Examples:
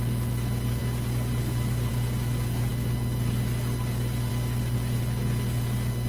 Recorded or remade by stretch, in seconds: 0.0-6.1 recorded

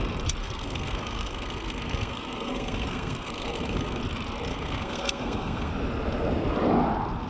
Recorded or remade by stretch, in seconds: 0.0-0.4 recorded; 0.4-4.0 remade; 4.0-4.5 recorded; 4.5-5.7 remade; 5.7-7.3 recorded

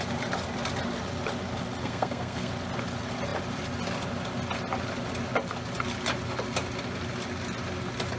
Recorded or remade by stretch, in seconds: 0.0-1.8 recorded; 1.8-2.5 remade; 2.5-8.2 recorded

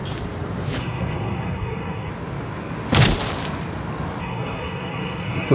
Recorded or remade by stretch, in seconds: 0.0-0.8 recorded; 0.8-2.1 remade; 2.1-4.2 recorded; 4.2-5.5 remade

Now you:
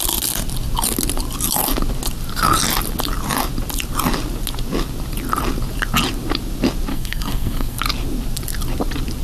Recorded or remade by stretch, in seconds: 0.0-6.9 recorded; 6.9-7.8 remade; 7.8-9.2 recorded

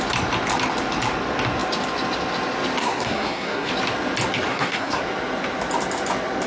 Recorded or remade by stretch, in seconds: 0.0-2.8 recorded; 2.8-3.7 remade; 3.7-4.5 recorded; 4.5-5.0 remade; 5.0-6.5 recorded

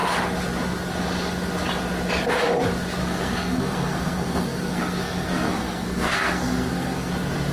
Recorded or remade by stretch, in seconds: 0.0-3.0 recorded; 3.0-7.1 remade; 7.1-7.5 recorded